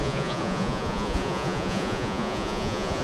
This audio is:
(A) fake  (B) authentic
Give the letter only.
A